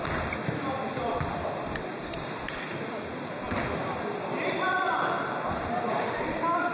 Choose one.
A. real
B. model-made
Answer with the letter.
A